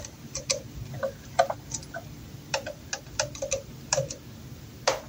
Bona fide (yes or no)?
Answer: yes